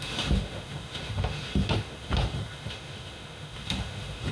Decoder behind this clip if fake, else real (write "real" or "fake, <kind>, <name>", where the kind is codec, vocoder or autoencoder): fake, autoencoder, DAC-VAE